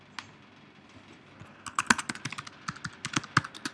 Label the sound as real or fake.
real